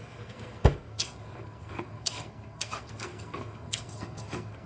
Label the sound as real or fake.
fake